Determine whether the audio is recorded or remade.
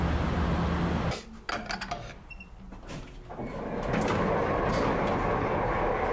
recorded